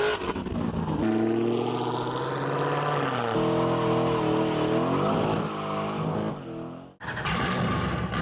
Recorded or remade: recorded